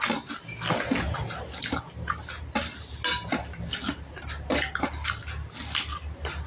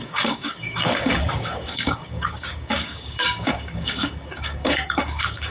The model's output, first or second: second